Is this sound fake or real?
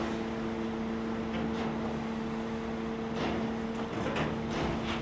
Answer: real